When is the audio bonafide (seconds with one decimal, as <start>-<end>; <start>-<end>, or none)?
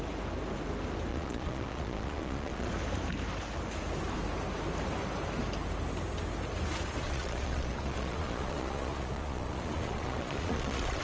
0.0-1.1; 2.7-7.0